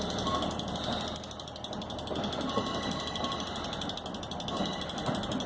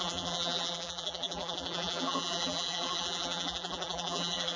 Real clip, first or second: first